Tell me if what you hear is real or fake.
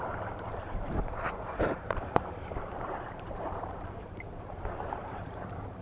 fake